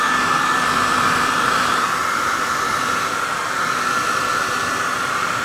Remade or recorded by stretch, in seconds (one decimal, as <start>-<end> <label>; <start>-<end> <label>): 0.0-5.4 remade